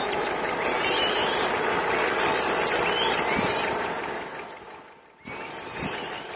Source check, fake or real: real